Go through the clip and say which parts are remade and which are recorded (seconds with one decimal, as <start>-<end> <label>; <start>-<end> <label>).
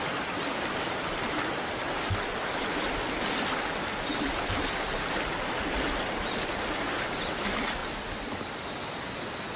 0.0-9.6 recorded